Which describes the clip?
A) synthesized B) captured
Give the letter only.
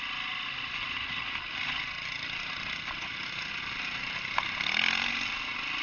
B